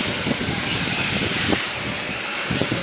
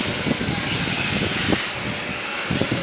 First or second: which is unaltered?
second